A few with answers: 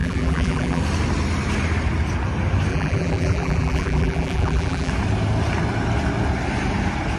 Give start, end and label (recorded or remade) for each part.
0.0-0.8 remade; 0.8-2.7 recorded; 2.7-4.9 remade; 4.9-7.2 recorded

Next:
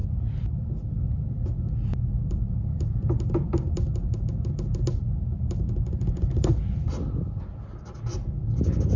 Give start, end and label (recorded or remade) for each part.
0.0-5.9 recorded; 5.9-6.9 remade; 6.9-9.0 recorded

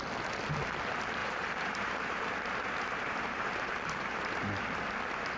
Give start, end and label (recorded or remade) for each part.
0.0-1.2 recorded; 1.2-4.4 remade; 4.4-5.4 recorded

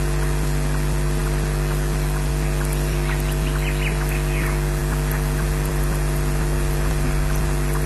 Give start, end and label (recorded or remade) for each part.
0.0-7.9 recorded